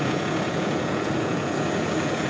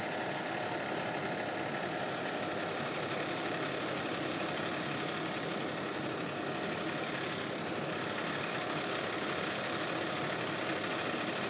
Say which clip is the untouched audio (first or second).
second